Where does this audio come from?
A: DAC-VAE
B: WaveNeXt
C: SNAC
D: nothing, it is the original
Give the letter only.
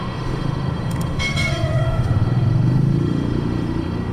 A